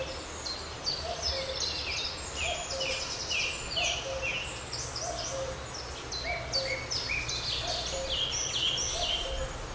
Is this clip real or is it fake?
real